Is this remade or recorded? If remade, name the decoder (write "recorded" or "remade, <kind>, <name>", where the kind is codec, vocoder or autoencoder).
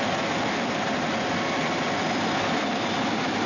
recorded